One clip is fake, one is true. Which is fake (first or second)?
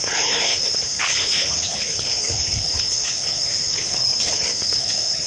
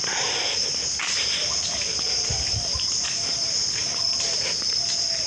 first